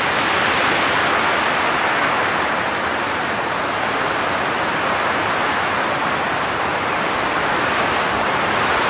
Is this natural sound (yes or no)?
yes